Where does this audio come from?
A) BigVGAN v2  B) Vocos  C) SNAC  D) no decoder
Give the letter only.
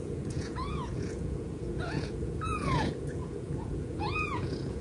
B